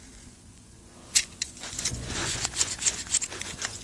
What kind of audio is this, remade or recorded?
remade